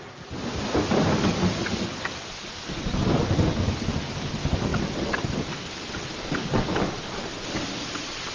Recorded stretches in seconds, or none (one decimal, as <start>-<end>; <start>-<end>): 0.0-8.3

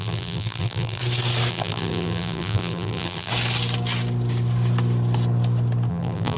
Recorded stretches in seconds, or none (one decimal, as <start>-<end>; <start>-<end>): 1.0-1.5; 3.3-5.9

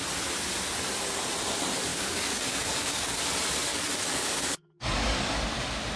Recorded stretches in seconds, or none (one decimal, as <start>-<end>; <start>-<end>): 0.0-1.9; 3.2-3.7; 5.4-6.0

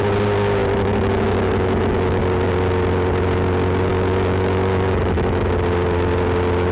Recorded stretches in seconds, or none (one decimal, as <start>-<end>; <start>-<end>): 0.0-0.6; 2.2-3.9; 5.4-6.7

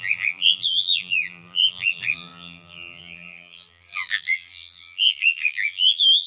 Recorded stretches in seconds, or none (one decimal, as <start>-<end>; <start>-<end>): none

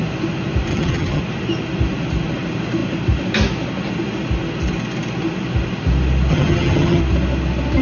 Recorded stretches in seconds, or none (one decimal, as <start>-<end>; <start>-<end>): 0.0-0.7; 1.2-6.3; 7.0-7.8

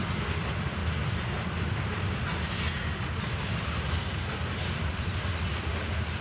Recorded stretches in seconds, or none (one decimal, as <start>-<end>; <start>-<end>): 0.0-5.1; 5.7-6.2

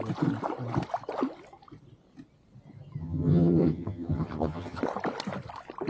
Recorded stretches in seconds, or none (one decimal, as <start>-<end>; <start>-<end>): 0.0-3.0; 4.8-5.9